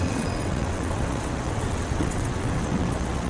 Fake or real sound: fake